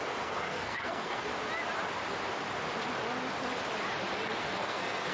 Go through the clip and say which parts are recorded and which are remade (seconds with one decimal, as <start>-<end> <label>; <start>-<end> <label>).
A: 0.0-1.3 remade; 1.3-4.4 recorded; 4.4-5.1 remade